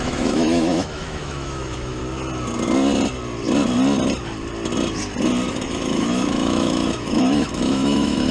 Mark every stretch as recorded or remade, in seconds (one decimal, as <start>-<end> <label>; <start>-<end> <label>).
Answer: 0.0-2.0 remade; 2.0-5.5 recorded; 5.5-8.3 remade